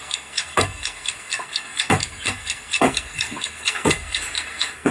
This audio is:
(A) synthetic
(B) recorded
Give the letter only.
A